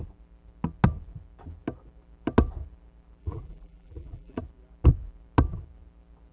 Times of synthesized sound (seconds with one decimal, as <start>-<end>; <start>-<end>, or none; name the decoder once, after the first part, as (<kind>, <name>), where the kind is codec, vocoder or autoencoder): 3.2-4.4 (vocoder, BigVGAN v2)